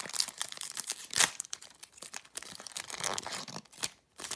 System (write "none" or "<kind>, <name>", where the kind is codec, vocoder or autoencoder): vocoder, BigVGAN v2